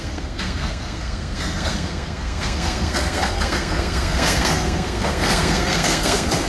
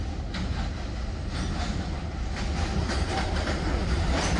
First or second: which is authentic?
second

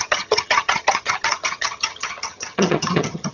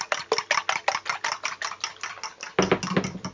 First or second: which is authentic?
second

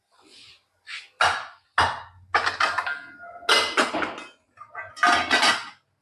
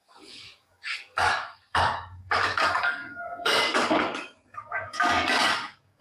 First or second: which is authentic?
first